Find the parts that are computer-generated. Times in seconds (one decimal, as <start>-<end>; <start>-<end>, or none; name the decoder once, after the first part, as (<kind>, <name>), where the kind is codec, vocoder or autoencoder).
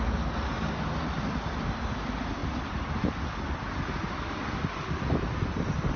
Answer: none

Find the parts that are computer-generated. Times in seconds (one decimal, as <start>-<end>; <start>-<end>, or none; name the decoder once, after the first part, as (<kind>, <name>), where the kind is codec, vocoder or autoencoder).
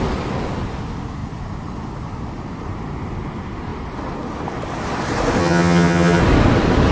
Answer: 5.4-6.2 (vocoder, HiFi-GAN)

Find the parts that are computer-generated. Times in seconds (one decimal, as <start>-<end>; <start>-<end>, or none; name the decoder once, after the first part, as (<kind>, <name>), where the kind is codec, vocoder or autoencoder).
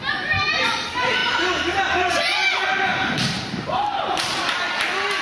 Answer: 1.2-1.9 (vocoder, BigVGAN v2); 2.9-4.7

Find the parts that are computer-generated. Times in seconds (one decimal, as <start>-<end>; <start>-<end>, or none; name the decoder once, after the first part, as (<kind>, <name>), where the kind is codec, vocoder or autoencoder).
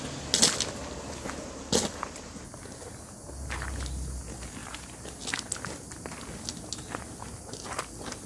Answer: 4.6-5.2 (vocoder, BigVGAN v2)